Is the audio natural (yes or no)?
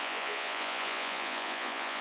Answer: no